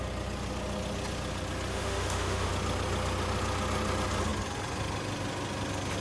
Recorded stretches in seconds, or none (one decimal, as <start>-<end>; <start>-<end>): 0.0-1.7; 2.5-6.0